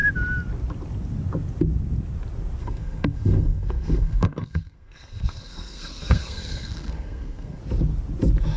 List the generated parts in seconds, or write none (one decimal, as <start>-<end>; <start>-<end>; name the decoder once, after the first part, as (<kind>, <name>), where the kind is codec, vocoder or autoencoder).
2.6-7.6 (codec, SNAC)